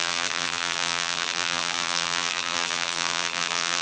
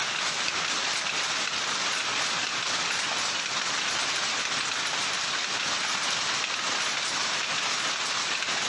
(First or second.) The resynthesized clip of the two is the first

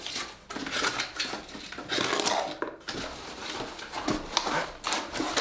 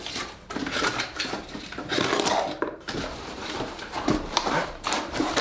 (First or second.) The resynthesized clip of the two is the second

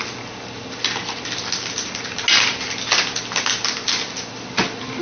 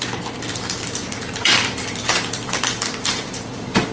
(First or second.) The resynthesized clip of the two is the second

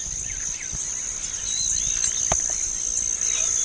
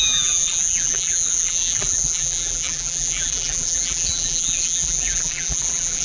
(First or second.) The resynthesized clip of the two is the second